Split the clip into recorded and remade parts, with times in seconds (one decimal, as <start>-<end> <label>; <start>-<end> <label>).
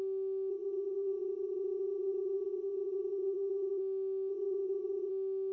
0.0-0.5 recorded; 0.5-3.8 remade; 3.8-4.3 recorded; 4.3-5.1 remade; 5.1-5.5 recorded